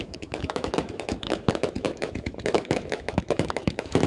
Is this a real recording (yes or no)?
no